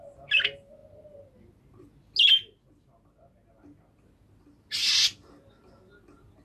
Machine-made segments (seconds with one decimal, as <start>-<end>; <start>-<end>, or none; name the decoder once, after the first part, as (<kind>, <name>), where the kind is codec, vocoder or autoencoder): none